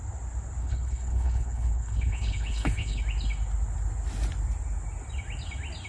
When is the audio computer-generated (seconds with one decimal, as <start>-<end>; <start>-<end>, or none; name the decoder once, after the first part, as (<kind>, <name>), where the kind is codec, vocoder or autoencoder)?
0.6-3.0 (codec, HILCodec)